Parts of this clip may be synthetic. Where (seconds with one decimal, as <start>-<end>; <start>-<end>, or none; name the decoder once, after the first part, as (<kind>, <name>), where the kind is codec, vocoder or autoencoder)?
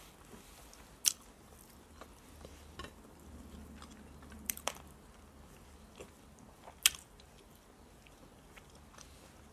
none